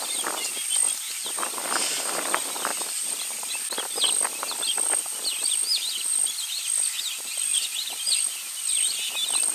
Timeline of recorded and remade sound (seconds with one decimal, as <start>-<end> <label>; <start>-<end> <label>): 0.0-9.5 recorded